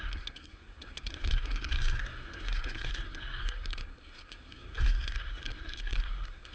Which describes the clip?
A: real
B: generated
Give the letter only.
B